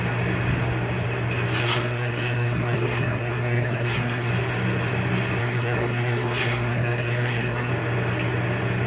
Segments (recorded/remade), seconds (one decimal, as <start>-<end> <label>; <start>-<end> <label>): 0.0-1.6 recorded; 1.6-4.3 remade; 4.3-5.4 recorded; 5.4-7.7 remade; 7.7-8.9 recorded

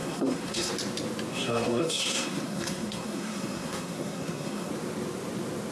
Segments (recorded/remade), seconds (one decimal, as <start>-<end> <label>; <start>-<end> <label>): 0.0-0.7 remade; 0.7-1.3 recorded; 1.3-4.7 remade; 4.7-5.7 recorded

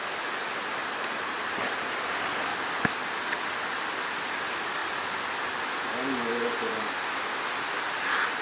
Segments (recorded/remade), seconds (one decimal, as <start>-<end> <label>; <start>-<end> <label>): 0.0-8.4 recorded

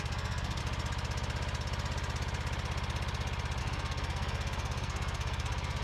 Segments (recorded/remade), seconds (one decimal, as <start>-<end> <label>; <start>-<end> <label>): 0.0-0.6 remade; 0.6-3.6 recorded; 3.6-5.8 remade

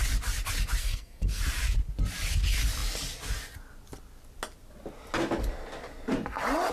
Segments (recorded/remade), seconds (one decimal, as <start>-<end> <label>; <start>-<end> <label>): 0.0-0.8 recorded; 0.8-1.4 remade; 1.4-6.7 recorded

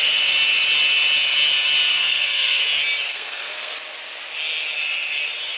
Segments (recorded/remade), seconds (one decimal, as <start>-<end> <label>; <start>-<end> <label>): 0.0-1.9 recorded; 1.9-2.6 remade; 2.6-3.1 recorded; 3.1-3.7 remade; 3.7-5.6 recorded